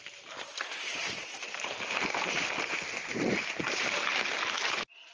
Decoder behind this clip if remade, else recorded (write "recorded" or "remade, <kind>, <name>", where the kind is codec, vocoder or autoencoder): remade, vocoder, BigVGAN v2